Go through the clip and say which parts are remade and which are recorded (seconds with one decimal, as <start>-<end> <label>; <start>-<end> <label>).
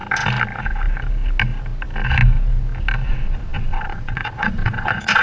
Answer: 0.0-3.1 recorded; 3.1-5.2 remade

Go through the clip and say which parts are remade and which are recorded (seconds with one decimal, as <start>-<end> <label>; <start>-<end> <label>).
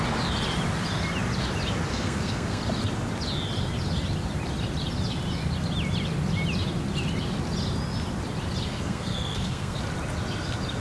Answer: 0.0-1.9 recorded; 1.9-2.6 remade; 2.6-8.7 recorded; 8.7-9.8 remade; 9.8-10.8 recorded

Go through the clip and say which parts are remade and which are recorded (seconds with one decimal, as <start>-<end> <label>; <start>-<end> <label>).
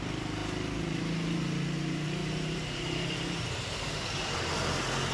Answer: 0.0-2.2 recorded; 2.2-3.9 remade; 3.9-5.1 recorded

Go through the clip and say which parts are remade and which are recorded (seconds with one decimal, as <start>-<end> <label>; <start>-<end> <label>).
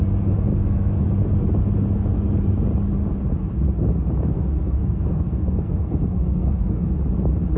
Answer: 0.0-0.5 recorded; 0.5-1.0 remade; 1.0-4.3 recorded; 4.3-6.9 remade; 6.9-7.6 recorded